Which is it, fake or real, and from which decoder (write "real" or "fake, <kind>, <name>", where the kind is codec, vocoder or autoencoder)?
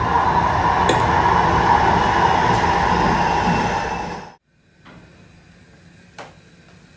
real